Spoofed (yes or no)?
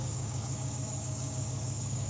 yes